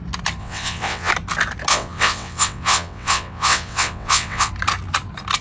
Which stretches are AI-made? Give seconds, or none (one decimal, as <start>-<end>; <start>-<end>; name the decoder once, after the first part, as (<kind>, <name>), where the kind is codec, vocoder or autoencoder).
0.4-1.1 (vocoder, WaveNeXt); 1.7-4.5